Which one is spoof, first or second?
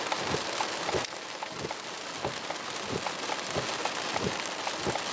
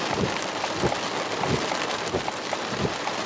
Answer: second